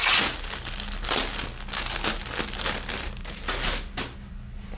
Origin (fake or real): real